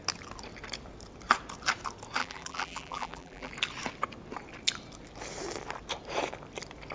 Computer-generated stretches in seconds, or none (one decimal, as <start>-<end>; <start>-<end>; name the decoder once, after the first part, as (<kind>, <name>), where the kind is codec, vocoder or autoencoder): 2.2-3.5 (vocoder, BigVGAN v2)